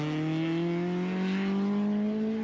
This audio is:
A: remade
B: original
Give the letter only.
B